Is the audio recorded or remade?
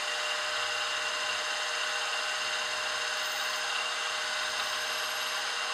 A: recorded